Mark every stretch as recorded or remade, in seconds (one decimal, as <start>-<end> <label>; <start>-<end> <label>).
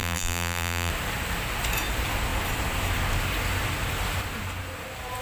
0.0-0.9 remade; 0.9-5.2 recorded